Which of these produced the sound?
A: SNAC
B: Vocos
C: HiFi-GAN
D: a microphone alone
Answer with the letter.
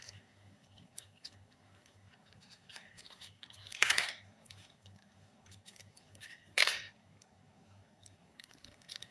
A